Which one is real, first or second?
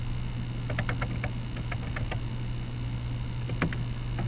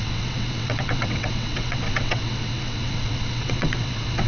first